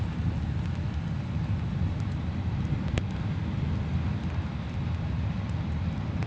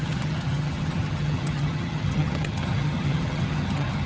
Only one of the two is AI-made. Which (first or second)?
second